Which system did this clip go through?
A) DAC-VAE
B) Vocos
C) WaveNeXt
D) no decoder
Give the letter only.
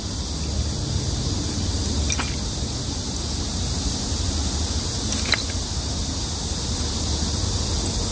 D